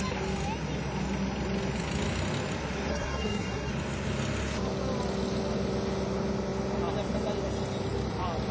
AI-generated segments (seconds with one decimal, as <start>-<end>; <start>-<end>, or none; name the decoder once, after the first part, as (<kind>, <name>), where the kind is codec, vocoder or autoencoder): 2.9-3.7 (codec, SNAC)